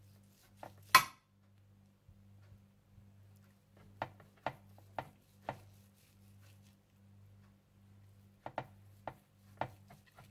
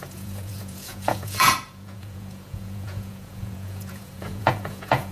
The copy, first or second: second